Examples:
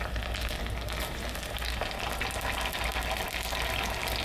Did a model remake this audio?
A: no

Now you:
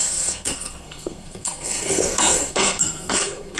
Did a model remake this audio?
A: yes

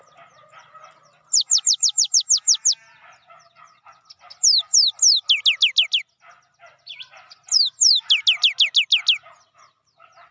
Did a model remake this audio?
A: no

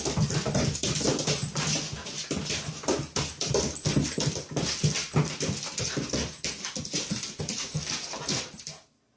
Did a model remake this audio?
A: no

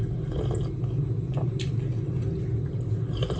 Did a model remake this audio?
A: no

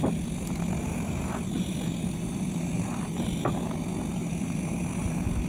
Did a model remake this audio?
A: no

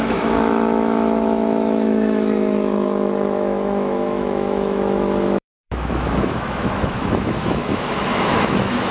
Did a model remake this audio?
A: yes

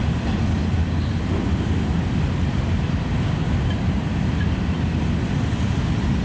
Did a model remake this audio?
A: no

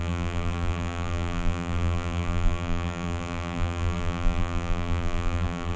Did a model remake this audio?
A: yes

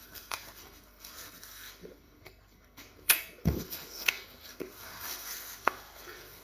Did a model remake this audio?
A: yes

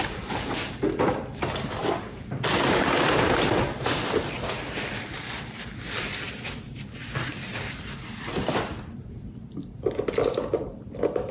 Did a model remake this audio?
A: yes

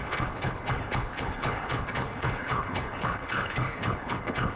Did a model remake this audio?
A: yes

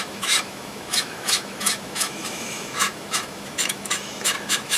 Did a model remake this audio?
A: yes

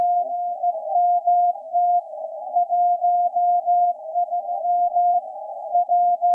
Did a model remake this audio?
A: yes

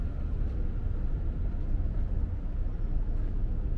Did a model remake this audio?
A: no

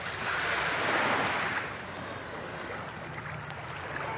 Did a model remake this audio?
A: no